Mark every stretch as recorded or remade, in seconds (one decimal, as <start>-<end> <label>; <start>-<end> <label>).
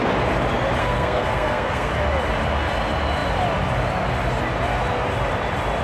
0.0-0.8 recorded; 0.8-1.9 remade; 1.9-5.8 recorded